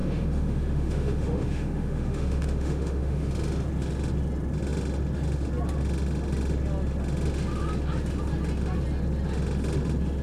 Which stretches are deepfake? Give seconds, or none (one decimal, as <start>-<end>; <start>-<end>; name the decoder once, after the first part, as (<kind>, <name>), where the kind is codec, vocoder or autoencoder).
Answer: 0.0-3.3 (autoencoder, DAC-VAE)